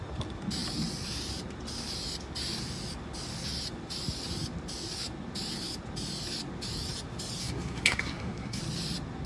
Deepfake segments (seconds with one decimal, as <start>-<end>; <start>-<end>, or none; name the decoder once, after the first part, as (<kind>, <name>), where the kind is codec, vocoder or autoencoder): 7.4-8.6 (codec, SNAC)